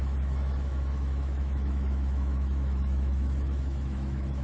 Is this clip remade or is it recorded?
remade